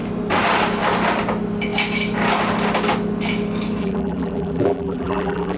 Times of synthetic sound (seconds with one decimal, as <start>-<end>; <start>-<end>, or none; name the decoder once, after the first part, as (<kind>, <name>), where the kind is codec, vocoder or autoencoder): 3.8-5.6 (vocoder, BigVGAN v2)